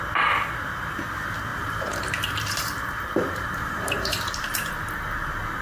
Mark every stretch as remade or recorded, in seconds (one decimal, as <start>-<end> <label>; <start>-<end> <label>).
0.0-1.5 recorded; 1.5-4.7 remade; 4.7-5.6 recorded